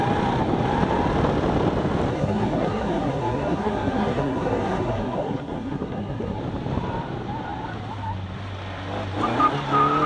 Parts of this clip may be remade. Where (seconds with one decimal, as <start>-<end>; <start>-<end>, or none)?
2.1-6.4